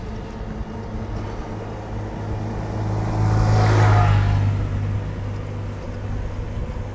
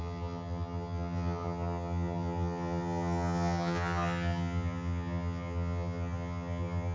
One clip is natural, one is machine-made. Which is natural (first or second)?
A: first